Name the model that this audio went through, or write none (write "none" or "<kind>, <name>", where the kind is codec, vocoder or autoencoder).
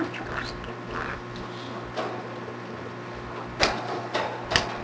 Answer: none